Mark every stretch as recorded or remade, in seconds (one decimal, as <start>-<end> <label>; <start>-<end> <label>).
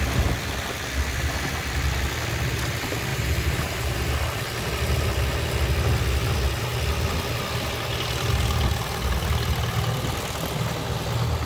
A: 0.0-3.1 recorded; 3.1-4.1 remade; 4.1-11.4 recorded